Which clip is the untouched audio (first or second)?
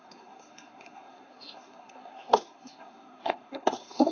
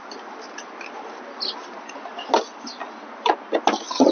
second